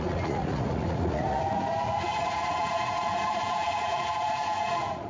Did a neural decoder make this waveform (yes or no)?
yes